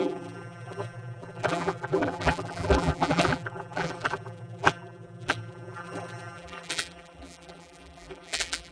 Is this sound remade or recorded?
remade